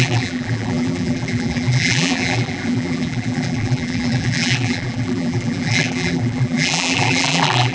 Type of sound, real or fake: fake